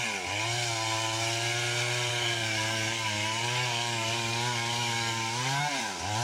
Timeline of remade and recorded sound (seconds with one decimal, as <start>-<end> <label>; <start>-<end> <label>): 0.0-2.1 recorded; 2.1-5.8 remade; 5.8-6.2 recorded